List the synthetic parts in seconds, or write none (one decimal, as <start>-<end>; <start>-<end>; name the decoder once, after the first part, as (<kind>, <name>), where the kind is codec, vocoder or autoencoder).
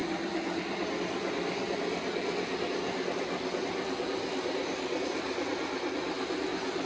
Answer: none